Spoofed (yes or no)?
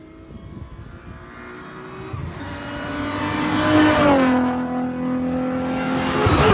no